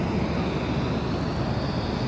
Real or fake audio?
real